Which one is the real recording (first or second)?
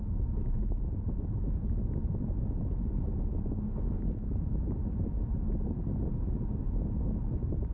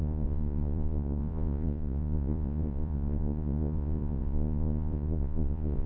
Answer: first